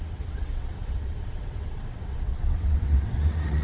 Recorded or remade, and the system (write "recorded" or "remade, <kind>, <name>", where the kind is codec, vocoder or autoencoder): remade, vocoder, WaveNeXt